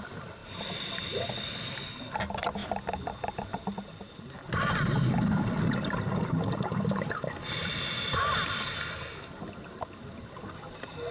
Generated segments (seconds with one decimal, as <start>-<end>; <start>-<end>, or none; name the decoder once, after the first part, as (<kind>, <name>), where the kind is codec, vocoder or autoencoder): none